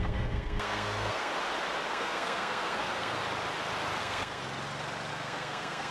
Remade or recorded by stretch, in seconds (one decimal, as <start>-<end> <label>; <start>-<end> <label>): 0.0-1.3 remade; 1.3-1.9 recorded; 1.9-3.2 remade; 3.2-4.0 recorded; 4.0-4.4 remade; 4.4-5.1 recorded; 5.1-5.9 remade

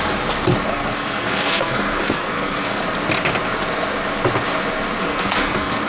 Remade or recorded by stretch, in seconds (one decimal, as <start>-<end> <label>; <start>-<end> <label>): 0.0-0.7 recorded; 0.7-2.8 remade; 2.8-5.0 recorded; 5.0-5.9 remade

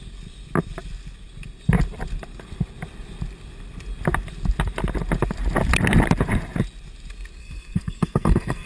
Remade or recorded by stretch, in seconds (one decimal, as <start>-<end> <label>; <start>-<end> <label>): 0.0-7.4 recorded; 7.4-8.7 remade

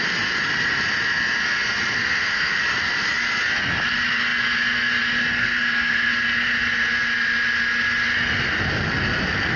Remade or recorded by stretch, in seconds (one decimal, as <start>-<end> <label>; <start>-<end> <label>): 0.0-2.0 recorded; 2.0-2.6 remade; 2.6-5.4 recorded; 5.4-6.1 remade; 6.1-9.6 recorded